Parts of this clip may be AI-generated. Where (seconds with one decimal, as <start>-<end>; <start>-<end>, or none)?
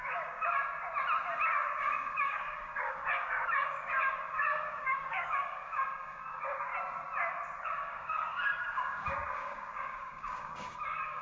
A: 0.0-0.6; 1.6-6.7; 7.6-11.2